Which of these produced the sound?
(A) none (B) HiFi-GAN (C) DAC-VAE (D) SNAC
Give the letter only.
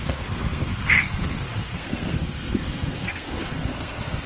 D